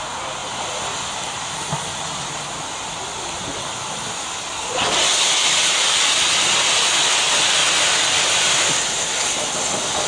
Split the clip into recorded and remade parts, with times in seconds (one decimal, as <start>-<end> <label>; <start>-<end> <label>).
0.0-10.1 recorded